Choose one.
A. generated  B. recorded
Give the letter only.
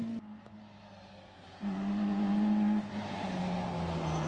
B